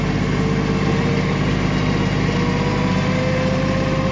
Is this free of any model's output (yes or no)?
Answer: yes